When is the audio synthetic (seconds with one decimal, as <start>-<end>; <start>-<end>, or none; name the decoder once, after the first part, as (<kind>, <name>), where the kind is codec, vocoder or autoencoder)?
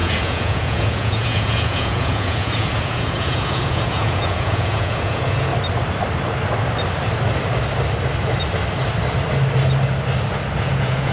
0.0-5.5 (vocoder, Vocos); 10.6-11.1